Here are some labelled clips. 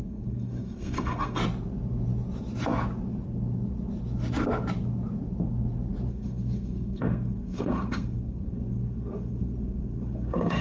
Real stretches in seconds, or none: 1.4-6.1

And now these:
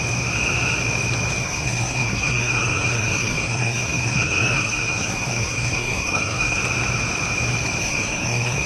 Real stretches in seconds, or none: 0.0-1.4; 6.6-7.8

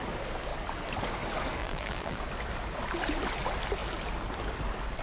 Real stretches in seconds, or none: 0.0-1.6; 2.2-5.0

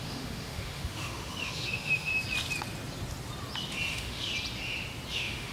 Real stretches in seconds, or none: 2.1-3.9; 4.3-5.1

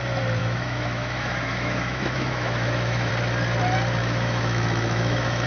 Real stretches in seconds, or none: 0.0-0.4; 3.1-4.0

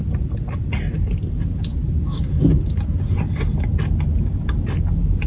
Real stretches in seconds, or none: 0.0-5.3

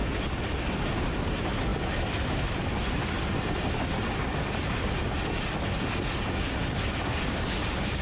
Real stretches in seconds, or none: 0.0-1.7; 2.9-6.6; 7.2-8.0

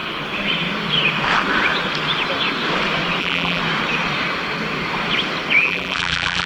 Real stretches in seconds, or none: 0.0-3.2; 3.6-5.6